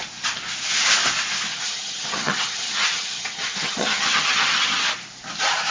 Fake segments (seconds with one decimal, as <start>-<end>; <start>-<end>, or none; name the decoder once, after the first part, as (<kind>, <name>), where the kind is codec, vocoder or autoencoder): 1.5-4.8 (vocoder, HiFi-GAN)